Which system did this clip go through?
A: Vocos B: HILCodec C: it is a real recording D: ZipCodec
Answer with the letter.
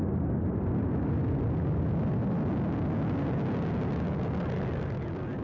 C